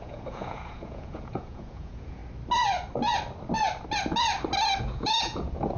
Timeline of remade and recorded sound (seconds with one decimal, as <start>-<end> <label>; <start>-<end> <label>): 0.0-2.2 remade; 2.2-4.8 recorded; 4.8-5.8 remade